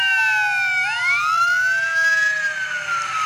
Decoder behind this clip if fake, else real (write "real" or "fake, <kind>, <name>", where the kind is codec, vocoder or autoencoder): real